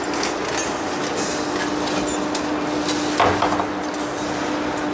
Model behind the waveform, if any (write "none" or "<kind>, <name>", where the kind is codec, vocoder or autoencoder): none